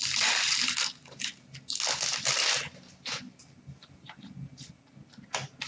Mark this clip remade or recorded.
recorded